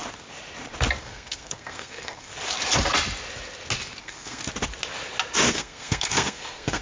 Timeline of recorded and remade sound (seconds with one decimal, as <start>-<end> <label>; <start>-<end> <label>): 0.0-1.0 recorded; 1.0-2.3 remade; 2.3-4.0 recorded; 4.0-4.4 remade; 4.4-5.5 recorded; 5.5-6.8 remade